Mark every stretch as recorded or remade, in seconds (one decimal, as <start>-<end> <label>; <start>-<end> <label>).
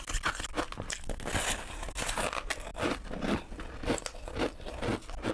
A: 0.0-5.3 recorded